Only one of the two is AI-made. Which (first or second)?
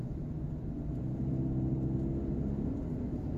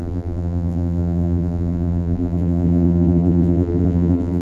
second